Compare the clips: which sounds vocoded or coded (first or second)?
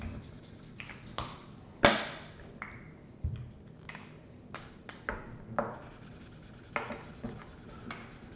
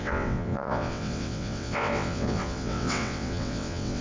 second